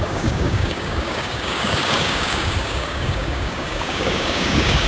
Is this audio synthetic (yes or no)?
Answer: yes